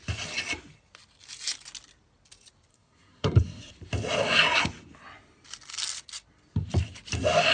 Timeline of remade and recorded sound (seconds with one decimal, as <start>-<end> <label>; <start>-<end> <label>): 0.0-2.7 recorded; 2.7-3.7 remade; 3.7-7.5 recorded